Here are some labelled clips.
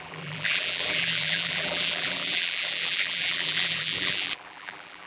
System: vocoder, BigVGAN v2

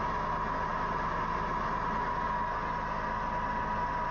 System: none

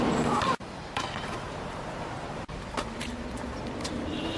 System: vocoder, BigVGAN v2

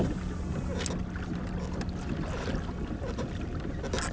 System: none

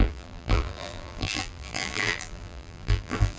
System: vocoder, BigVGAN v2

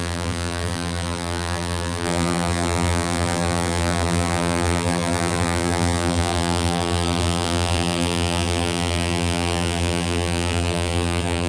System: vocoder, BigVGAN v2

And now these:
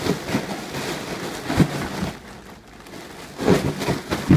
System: none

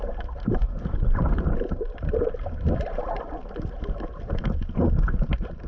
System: vocoder, BigVGAN v2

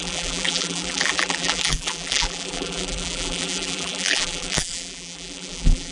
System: vocoder, BigVGAN v2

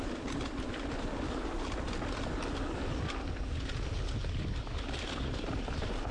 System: none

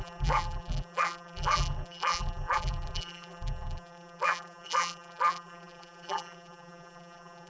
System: vocoder, BigVGAN v2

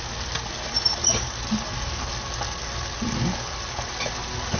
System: none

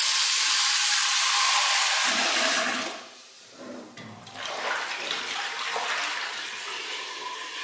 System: vocoder, BigVGAN v2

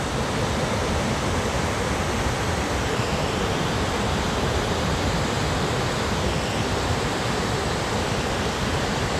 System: none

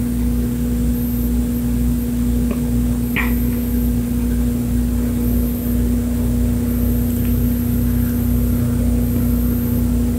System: none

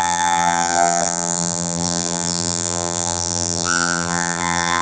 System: vocoder, BigVGAN v2